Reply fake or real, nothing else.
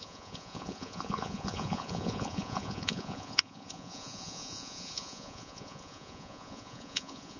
fake